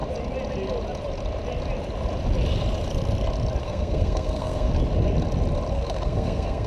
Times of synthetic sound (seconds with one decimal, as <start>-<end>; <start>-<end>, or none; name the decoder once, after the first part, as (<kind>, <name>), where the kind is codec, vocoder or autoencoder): 3.6-4.7 (codec, SNAC); 5.7-6.7